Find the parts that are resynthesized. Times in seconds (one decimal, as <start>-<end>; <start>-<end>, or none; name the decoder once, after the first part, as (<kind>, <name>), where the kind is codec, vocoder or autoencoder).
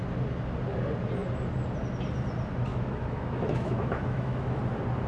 2.7-4.6 (autoencoder, DAC-VAE)